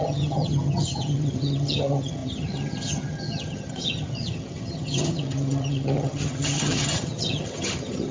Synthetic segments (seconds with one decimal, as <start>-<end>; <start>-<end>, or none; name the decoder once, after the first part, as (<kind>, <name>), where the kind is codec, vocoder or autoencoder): 0.0-8.1 (vocoder, HiFi-GAN)